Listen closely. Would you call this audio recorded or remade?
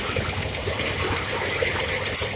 remade